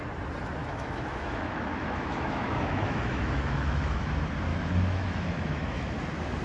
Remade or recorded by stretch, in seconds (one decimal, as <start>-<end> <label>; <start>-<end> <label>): 0.0-0.6 recorded; 0.6-4.1 remade; 4.1-4.5 recorded; 4.5-6.0 remade; 6.0-6.4 recorded